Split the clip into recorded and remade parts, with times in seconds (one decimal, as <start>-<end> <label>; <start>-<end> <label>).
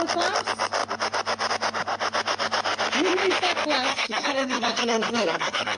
0.0-3.9 recorded; 3.9-5.8 remade